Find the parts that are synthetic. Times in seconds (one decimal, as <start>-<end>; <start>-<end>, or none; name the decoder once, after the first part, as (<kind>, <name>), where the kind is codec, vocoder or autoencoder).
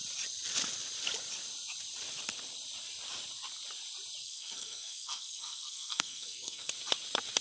4.2-6.7 (codec, SNAC)